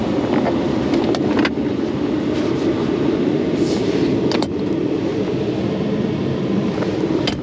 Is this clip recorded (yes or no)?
yes